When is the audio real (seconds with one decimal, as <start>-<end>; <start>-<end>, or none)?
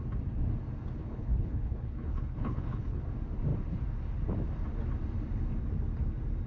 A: 0.0-1.0; 3.0-6.5